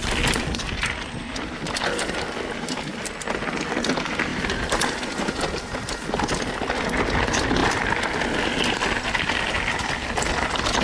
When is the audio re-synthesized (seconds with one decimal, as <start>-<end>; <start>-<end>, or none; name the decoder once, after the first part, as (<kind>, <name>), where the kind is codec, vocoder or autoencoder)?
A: none